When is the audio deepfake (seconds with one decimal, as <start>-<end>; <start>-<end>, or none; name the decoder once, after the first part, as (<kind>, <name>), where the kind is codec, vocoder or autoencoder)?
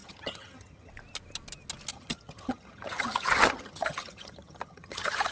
0.0-0.9 (vocoder, HiFi-GAN); 1.9-5.3